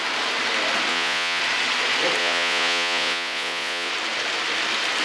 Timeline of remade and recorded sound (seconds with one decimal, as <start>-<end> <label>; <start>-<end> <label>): 0.0-0.9 recorded; 0.9-1.4 remade; 1.4-2.2 recorded; 2.2-3.9 remade; 3.9-5.0 recorded